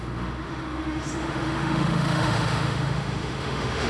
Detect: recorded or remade remade